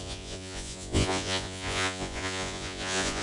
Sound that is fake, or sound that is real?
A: fake